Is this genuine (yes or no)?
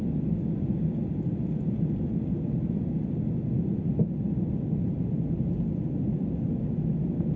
yes